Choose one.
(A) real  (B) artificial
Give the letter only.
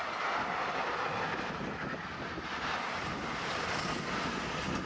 A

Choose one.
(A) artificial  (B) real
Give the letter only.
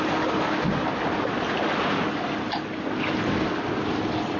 B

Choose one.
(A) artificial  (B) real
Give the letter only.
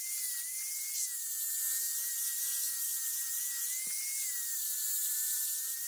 B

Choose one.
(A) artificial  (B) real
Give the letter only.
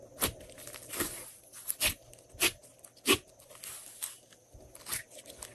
B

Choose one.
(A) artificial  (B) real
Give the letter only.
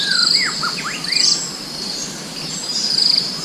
B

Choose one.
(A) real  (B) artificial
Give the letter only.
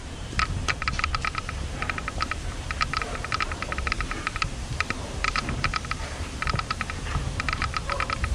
B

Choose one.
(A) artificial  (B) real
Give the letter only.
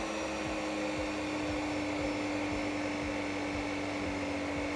B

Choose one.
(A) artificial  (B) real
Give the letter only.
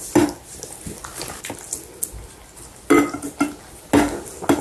B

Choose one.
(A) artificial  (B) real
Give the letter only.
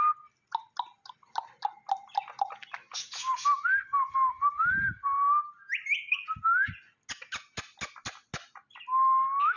B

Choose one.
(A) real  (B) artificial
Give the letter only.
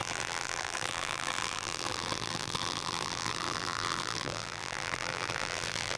B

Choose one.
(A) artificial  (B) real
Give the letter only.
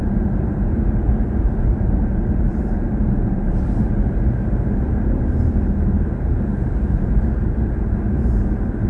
A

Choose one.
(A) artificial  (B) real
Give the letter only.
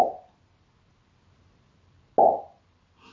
B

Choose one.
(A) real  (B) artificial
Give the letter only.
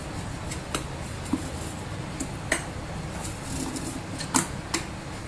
A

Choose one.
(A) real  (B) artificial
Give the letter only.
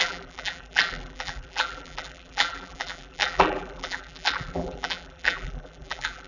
B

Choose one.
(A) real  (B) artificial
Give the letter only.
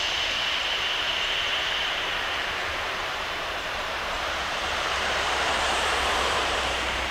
B